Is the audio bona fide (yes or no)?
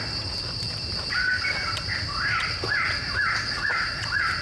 yes